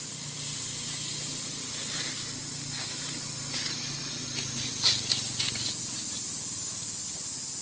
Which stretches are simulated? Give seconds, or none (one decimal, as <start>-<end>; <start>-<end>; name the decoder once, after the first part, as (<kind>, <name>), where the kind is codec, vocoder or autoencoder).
none